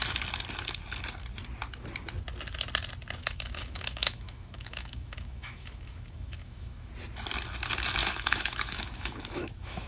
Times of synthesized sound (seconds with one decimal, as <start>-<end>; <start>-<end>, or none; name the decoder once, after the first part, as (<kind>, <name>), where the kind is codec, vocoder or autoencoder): 3.2-6.9 (autoencoder, DAC-VAE); 8.0-9.9